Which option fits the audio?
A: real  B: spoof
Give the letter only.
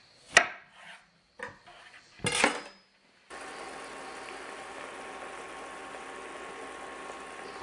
A